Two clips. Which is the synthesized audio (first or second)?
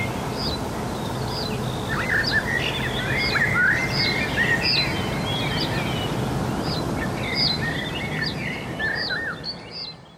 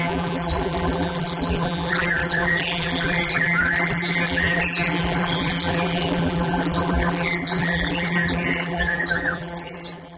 second